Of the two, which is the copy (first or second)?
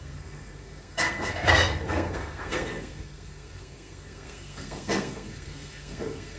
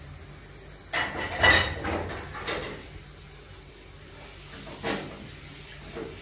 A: first